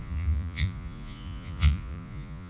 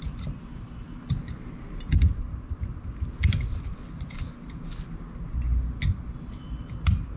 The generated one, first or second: first